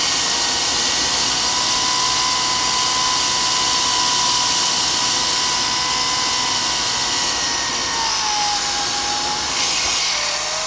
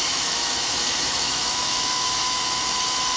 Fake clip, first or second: second